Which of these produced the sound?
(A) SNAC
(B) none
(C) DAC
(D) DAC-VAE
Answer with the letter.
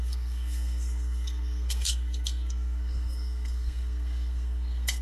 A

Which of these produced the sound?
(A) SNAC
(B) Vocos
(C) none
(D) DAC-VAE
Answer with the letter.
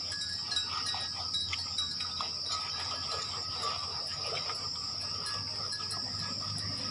C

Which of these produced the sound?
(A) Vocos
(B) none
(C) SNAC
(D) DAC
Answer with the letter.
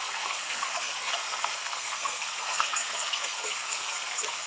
C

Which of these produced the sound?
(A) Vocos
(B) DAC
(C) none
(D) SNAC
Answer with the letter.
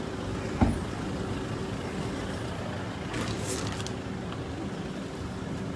C